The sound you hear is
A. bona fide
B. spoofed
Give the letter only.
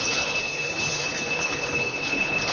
B